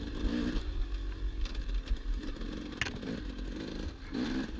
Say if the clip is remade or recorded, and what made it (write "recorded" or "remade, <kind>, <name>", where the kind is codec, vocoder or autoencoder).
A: recorded